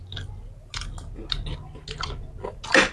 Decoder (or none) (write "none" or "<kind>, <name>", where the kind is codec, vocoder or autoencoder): none